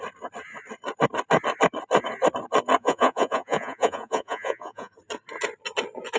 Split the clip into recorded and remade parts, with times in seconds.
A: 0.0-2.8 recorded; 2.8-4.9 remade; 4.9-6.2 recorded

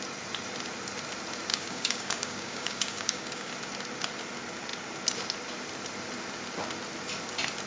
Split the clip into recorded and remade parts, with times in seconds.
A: 0.0-1.5 recorded; 1.5-3.5 remade; 3.5-7.7 recorded

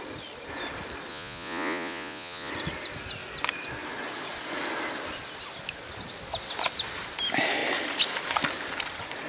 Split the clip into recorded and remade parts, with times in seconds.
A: 0.0-1.1 recorded; 1.1-2.5 remade; 2.5-9.3 recorded

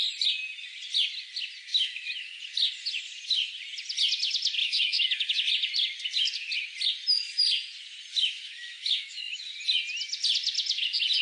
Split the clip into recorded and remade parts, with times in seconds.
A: 0.0-1.7 recorded; 1.7-2.4 remade; 2.4-4.6 recorded; 4.6-5.5 remade; 5.5-8.1 recorded; 8.1-9.5 remade; 9.5-11.2 recorded

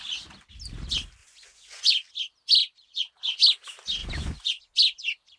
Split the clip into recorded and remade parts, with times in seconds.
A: 0.0-1.2 recorded; 1.2-1.9 remade; 1.9-2.6 recorded; 2.6-3.2 remade; 3.2-4.0 recorded; 4.0-4.6 remade; 4.6-5.4 recorded

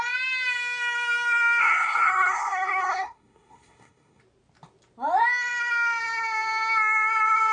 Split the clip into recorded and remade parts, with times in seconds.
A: 0.0-1.6 recorded; 1.6-4.2 remade; 4.2-7.5 recorded

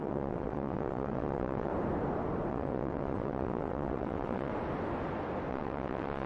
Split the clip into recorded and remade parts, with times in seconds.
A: 0.0-1.7 remade; 1.7-2.5 recorded; 2.5-4.5 remade; 4.5-5.5 recorded; 5.5-6.3 remade